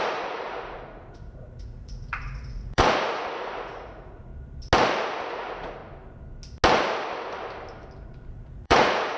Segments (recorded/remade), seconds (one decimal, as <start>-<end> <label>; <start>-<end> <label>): 0.0-4.3 remade; 4.3-5.3 recorded; 5.3-5.8 remade; 5.8-8.0 recorded; 8.0-9.2 remade